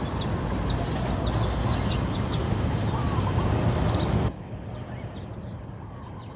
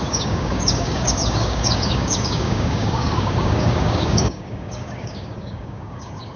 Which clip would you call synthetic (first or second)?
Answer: second